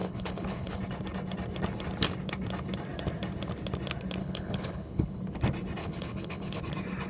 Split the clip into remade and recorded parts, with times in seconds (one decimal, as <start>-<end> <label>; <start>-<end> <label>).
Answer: 0.0-0.8 remade; 0.8-4.2 recorded; 4.2-5.2 remade; 5.2-5.8 recorded; 5.8-6.6 remade; 6.6-7.1 recorded